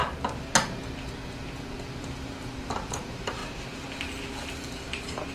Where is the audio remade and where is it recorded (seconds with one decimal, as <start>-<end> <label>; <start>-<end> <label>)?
0.0-2.0 recorded; 2.0-3.4 remade; 3.4-4.8 recorded; 4.8-5.3 remade